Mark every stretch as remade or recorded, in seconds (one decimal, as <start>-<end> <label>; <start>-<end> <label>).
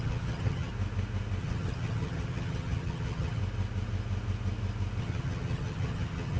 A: 0.0-0.7 remade; 0.7-1.4 recorded; 1.4-3.4 remade; 3.4-5.0 recorded; 5.0-6.4 remade